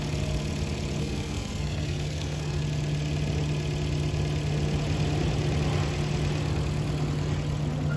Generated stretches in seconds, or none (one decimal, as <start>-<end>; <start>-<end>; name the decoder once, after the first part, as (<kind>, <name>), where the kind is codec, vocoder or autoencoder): 1.0-2.6 (codec, SNAC)